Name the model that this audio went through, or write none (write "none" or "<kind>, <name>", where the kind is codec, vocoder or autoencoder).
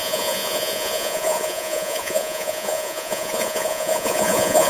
vocoder, Vocos